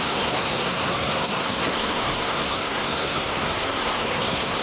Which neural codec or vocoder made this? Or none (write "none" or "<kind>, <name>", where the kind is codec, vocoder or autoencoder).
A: codec, SNAC